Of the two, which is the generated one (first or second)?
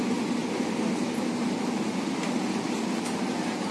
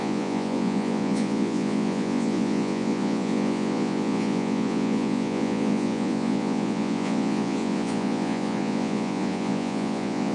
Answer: second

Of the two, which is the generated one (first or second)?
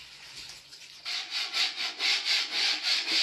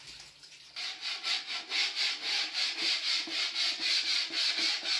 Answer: first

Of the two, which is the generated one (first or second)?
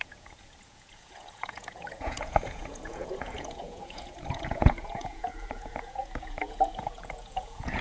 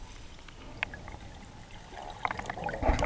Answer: first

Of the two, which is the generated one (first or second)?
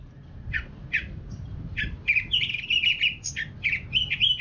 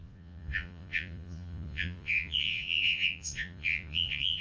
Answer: second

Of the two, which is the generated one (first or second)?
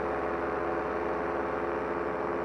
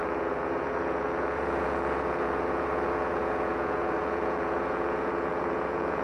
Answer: second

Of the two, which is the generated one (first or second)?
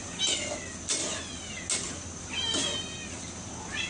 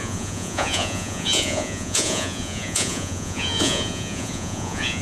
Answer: second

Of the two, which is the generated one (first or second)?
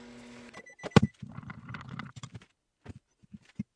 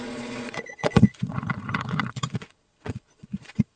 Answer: second